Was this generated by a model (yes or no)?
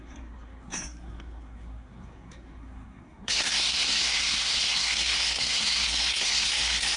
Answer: yes